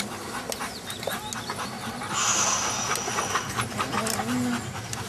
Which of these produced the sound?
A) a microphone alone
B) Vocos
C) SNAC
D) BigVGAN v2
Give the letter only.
A